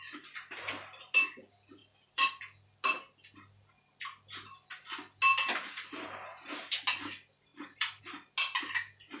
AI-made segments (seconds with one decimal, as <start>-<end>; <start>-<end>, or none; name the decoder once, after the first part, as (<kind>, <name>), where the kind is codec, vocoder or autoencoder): 1.8-2.4 (vocoder, BigVGAN v2); 7.5-8.0